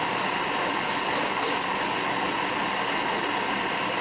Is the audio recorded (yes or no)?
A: yes